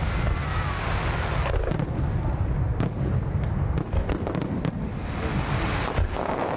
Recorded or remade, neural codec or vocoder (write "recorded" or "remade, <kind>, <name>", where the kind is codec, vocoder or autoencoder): recorded